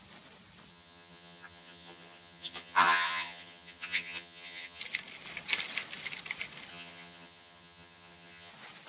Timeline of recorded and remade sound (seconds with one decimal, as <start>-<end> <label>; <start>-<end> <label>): 0.0-0.7 recorded; 0.7-4.8 remade; 4.8-6.7 recorded; 6.7-8.5 remade; 8.5-8.9 recorded